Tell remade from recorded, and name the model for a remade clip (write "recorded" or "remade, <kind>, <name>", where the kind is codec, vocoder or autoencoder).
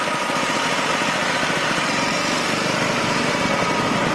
remade, vocoder, BigVGAN v2